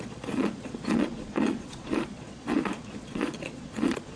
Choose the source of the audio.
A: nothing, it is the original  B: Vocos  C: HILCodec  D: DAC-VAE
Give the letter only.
B